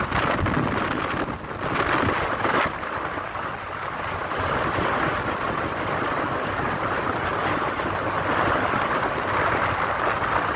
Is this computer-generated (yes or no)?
no